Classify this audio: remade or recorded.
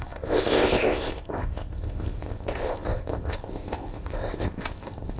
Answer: remade